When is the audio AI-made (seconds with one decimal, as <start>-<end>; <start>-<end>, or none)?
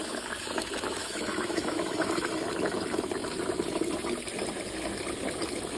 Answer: 0.0-2.3